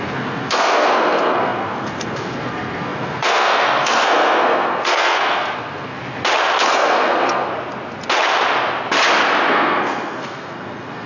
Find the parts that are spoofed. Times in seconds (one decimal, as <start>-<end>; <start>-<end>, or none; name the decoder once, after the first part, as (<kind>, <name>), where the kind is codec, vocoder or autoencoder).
0.0-6.0 (codec, SNAC); 6.7-7.5; 9.5-11.1